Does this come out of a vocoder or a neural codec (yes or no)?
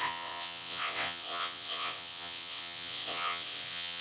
yes